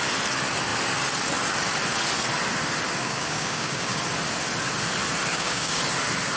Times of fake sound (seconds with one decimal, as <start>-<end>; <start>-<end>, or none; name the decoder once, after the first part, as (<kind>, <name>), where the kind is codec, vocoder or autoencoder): 3.0-4.0 (codec, DAC); 5.3-5.8